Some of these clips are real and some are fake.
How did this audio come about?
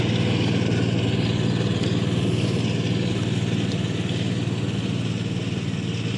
real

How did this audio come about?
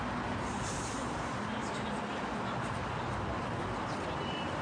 real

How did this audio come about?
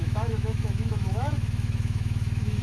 fake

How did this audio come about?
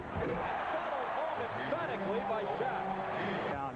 real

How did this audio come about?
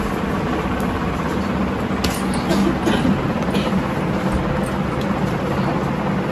real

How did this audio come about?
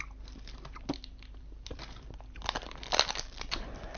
fake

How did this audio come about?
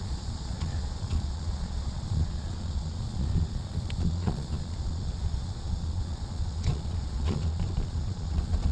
fake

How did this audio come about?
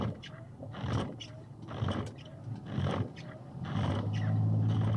real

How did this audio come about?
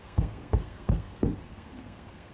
fake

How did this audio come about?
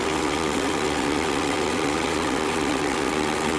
fake